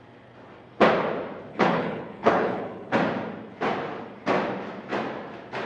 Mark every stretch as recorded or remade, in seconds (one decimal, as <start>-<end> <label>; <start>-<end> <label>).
0.0-1.5 recorded; 1.5-2.9 remade; 2.9-5.7 recorded